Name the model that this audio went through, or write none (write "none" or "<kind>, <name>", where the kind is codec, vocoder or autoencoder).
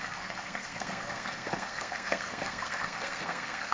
codec, SNAC